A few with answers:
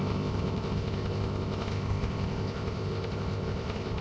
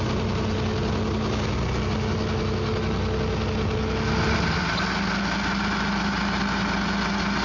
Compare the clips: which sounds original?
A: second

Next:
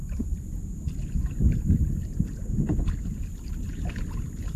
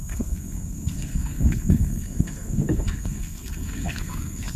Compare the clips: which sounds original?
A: first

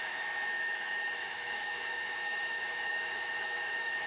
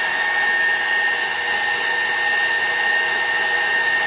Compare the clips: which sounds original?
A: second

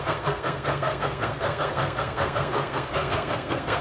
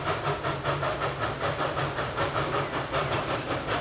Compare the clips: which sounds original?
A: second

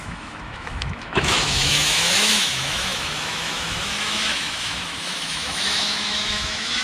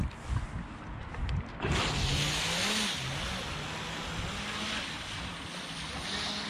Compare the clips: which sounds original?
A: second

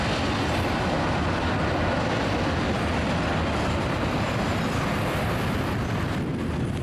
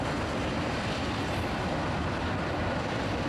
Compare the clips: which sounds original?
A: first